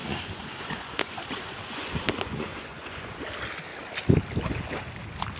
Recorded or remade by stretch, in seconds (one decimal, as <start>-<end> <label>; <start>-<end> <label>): 0.0-3.2 remade; 3.2-5.4 recorded